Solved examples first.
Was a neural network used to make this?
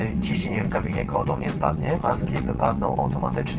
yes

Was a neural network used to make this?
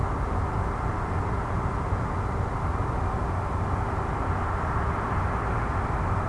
no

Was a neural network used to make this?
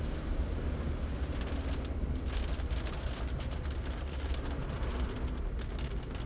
no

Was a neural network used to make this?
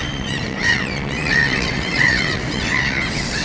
yes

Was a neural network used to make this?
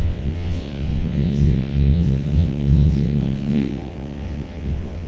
yes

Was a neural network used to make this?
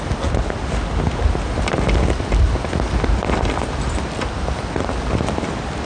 no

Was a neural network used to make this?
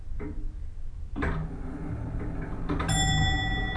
no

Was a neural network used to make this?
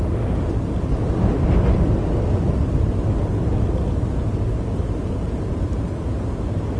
no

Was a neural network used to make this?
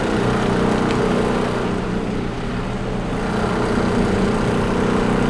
no